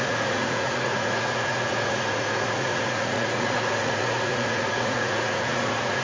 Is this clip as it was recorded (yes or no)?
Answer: no